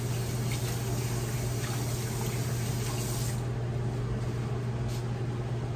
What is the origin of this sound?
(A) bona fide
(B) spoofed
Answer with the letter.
A